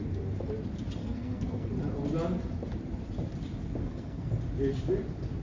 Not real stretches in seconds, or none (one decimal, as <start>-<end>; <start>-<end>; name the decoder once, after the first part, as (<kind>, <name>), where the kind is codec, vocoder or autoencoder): 1.0-1.7 (codec, SNAC); 3.8-4.3